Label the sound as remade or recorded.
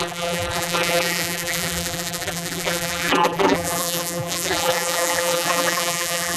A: remade